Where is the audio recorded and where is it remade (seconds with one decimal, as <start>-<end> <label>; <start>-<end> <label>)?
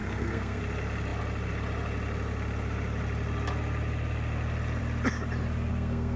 0.0-0.6 remade; 0.6-5.7 recorded; 5.7-6.2 remade